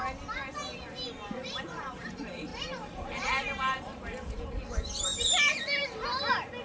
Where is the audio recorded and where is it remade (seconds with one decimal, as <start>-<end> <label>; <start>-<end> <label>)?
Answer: 0.0-1.4 recorded; 1.4-2.1 remade; 2.1-2.5 recorded; 2.5-4.5 remade; 4.5-6.6 recorded